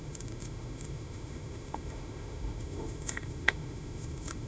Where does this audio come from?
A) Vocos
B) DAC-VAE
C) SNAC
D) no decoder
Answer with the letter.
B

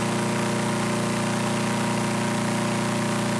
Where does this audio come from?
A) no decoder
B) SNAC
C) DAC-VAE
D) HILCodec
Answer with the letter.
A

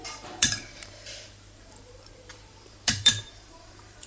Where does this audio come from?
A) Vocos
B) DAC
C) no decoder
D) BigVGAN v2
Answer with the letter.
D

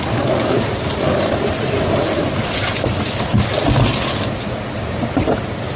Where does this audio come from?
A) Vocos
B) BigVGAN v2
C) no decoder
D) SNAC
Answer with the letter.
C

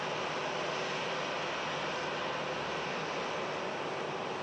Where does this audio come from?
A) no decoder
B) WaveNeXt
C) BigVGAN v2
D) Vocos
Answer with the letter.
A